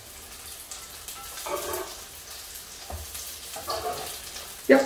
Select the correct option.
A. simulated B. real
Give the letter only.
B